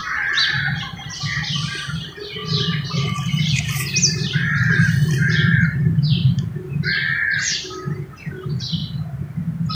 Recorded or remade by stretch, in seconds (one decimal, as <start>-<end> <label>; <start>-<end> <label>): 0.0-1.9 recorded; 1.9-8.8 remade; 8.8-9.7 recorded